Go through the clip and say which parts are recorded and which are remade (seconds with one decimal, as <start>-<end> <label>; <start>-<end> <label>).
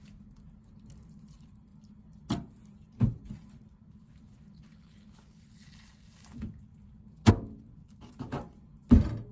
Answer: 0.0-9.3 recorded